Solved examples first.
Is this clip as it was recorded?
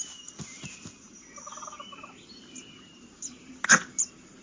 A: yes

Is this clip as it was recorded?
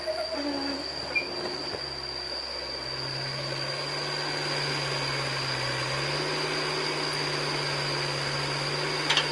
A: yes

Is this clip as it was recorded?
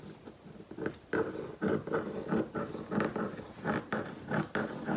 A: yes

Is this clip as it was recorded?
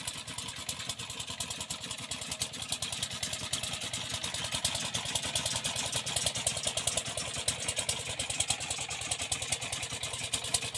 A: yes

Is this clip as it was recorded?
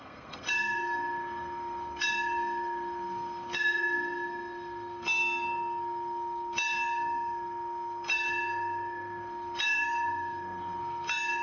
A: no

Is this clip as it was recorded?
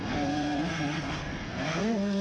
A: no